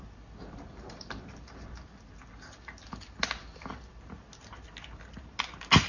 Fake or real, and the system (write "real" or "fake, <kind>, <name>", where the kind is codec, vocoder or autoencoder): real